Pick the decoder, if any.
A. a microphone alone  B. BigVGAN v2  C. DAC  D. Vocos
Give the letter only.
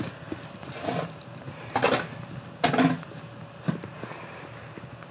A